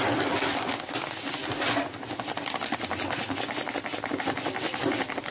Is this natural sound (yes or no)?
yes